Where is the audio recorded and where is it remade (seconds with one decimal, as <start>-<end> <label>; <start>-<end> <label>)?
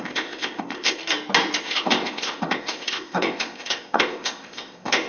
0.0-1.0 remade; 1.0-1.6 recorded; 1.6-5.1 remade